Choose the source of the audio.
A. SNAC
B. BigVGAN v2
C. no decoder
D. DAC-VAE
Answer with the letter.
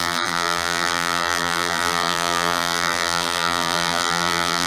B